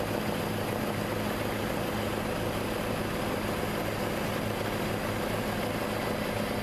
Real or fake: real